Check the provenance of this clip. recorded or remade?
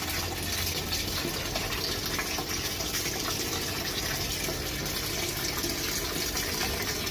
recorded